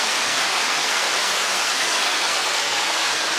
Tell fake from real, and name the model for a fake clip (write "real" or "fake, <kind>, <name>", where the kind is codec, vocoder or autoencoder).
fake, codec, SNAC